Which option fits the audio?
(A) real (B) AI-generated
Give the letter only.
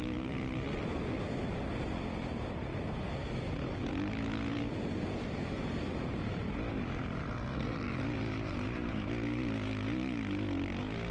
A